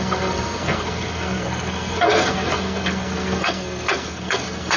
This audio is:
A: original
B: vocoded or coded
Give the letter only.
B